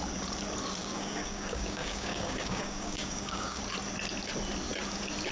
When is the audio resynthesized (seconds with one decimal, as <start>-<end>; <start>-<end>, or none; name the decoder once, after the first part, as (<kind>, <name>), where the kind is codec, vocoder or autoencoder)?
0.8-3.6 (codec, DAC)